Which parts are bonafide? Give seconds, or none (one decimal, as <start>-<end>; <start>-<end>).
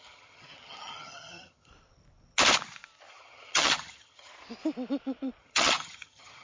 1.7-3.1; 4.3-5.4